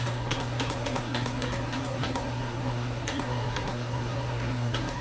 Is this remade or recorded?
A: remade